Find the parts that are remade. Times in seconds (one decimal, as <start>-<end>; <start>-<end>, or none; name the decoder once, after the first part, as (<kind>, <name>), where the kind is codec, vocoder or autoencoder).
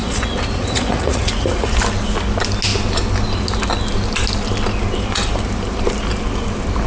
0.0-1.8 (vocoder, Vocos)